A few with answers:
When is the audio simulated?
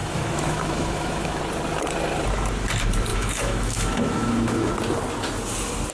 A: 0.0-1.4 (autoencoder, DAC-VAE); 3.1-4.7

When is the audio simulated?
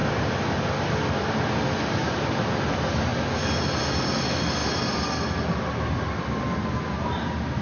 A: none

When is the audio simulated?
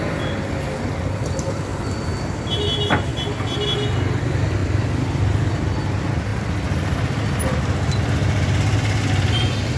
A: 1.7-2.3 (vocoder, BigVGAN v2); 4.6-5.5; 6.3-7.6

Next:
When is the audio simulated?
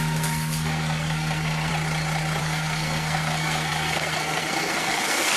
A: 0.0-1.7 (codec, SNAC); 2.4-5.4